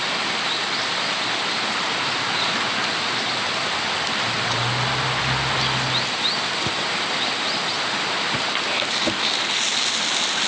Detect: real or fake real